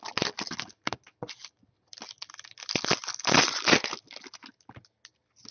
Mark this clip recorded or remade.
recorded